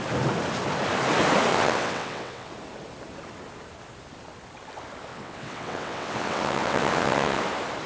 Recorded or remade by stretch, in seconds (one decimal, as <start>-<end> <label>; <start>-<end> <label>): 0.0-1.5 recorded; 1.5-2.5 remade; 2.5-5.1 recorded; 5.1-7.4 remade; 7.4-7.9 recorded